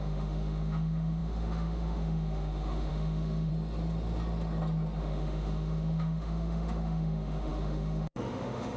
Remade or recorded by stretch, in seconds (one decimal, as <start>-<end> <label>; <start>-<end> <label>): 0.0-3.5 remade; 3.5-5.0 recorded; 5.0-8.8 remade